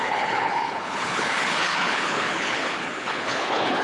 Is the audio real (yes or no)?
no